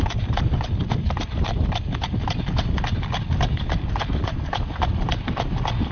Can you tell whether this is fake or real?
real